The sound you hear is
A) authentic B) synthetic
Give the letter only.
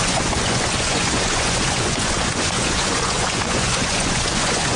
B